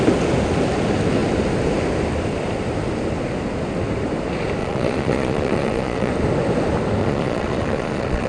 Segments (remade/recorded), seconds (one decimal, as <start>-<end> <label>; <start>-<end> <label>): 0.0-4.6 recorded; 4.6-6.1 remade; 6.1-7.0 recorded; 7.0-8.3 remade